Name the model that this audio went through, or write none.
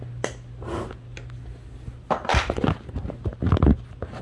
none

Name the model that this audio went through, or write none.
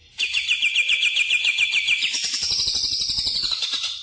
vocoder, BigVGAN v2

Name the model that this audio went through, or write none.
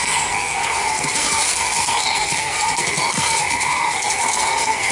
codec, SNAC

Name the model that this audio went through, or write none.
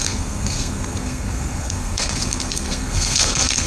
codec, SNAC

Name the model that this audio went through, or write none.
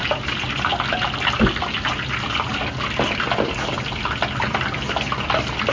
none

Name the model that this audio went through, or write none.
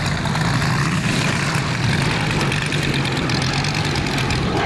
none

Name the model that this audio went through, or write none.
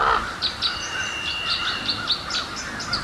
none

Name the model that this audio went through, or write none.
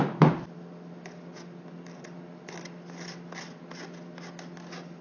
none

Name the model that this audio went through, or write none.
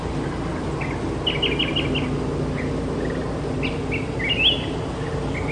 none